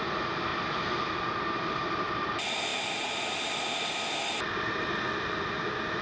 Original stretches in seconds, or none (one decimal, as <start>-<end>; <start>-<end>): 0.0-6.0